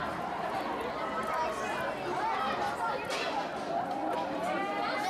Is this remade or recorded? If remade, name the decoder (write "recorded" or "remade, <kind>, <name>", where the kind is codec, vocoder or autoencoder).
recorded